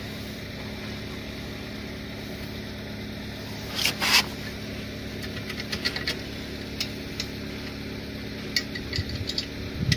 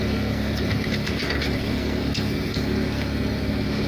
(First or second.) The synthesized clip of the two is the second